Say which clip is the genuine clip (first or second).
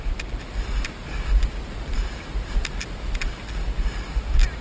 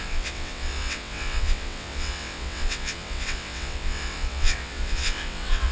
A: first